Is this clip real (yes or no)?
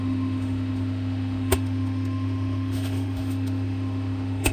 no